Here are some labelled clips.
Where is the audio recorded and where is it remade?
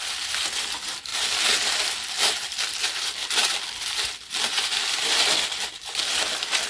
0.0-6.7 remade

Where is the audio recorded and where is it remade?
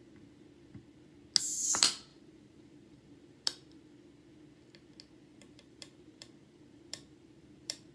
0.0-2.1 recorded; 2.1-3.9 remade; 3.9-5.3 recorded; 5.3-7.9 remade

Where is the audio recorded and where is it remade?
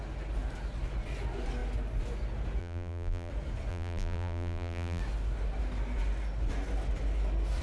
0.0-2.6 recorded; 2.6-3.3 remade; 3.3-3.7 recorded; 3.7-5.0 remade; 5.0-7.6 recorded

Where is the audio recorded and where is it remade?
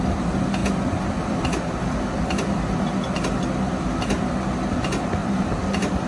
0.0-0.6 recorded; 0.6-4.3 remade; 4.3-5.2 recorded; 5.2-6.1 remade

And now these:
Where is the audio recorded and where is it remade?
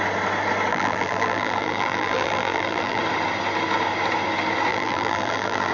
0.0-0.7 recorded; 0.7-3.0 remade; 3.0-4.7 recorded; 4.7-5.7 remade